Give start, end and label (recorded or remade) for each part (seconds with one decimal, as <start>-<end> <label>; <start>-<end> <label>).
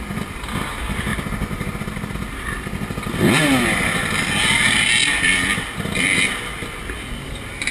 0.0-7.7 recorded